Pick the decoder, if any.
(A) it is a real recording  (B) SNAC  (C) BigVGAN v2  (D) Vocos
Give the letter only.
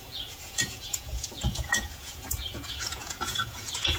D